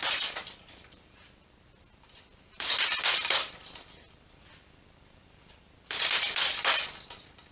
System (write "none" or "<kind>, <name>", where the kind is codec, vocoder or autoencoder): vocoder, BigVGAN v2